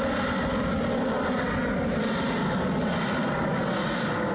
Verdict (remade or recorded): recorded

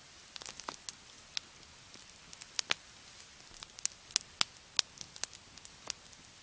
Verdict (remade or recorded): recorded